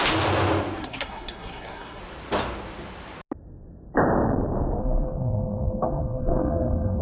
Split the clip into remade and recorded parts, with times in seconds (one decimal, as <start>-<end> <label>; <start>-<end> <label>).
0.0-0.8 recorded; 0.8-2.0 remade; 2.0-4.8 recorded; 4.8-7.0 remade

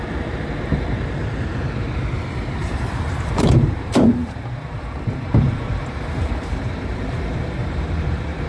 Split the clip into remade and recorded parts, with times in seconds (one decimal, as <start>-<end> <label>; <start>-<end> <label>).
0.0-1.5 remade; 1.5-2.7 recorded; 2.7-8.5 remade

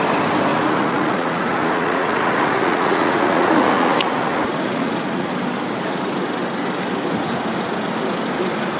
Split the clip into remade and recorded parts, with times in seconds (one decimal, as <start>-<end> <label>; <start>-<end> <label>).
0.0-0.5 recorded; 0.5-5.3 remade; 5.3-8.8 recorded

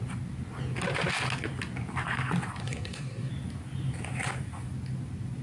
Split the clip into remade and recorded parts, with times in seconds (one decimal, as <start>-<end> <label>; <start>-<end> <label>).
0.0-2.6 recorded; 2.6-3.3 remade; 3.3-5.4 recorded